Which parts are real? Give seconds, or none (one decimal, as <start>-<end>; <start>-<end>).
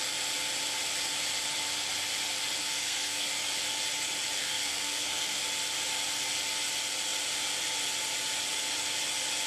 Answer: 0.0-2.6; 3.3-4.4; 5.4-9.5